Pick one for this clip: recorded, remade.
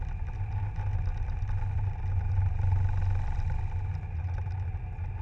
recorded